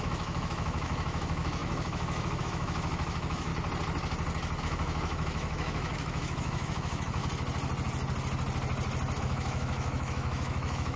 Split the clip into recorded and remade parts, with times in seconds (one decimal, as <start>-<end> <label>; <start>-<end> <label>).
0.0-3.5 remade; 3.5-4.6 recorded; 4.6-7.2 remade; 7.2-9.2 recorded; 9.2-11.0 remade